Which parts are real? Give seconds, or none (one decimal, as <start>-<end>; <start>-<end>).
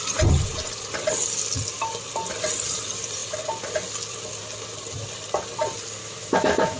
0.0-6.0